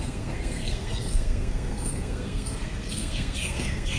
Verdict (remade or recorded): remade